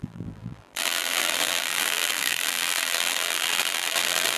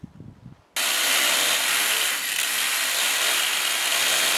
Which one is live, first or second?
second